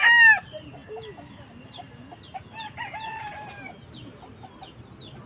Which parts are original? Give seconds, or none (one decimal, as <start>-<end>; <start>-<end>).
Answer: 0.0-5.3